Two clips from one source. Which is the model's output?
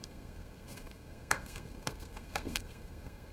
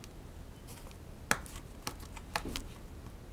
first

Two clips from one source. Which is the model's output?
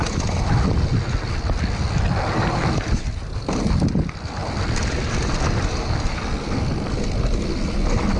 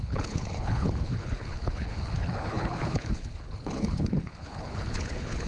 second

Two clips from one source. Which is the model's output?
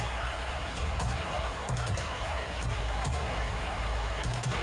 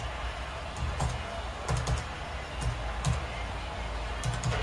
first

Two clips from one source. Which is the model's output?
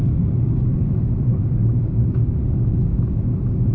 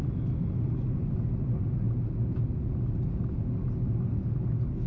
first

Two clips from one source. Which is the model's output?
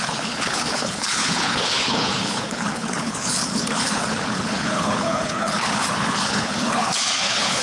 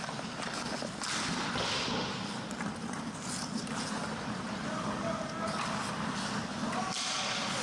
first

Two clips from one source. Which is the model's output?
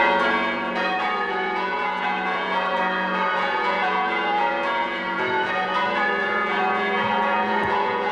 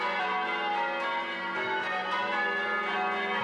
first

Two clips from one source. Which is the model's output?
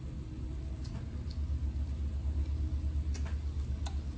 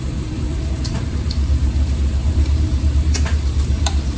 second